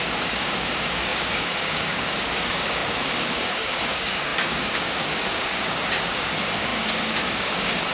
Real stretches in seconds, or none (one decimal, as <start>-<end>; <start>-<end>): none